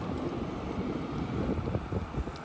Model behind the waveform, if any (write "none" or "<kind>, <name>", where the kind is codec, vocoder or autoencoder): none